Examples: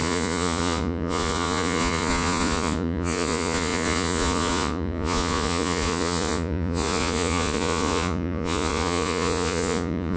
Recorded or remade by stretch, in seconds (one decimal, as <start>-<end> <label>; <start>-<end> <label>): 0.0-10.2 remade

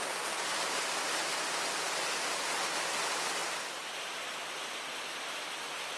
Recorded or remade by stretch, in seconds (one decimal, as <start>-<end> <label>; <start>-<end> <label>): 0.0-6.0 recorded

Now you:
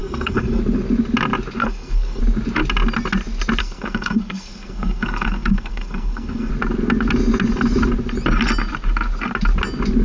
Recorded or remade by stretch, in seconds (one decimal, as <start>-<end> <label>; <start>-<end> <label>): 0.0-0.6 remade; 0.6-1.6 recorded; 1.6-2.2 remade; 2.2-3.6 recorded; 3.6-6.5 remade; 6.5-10.0 recorded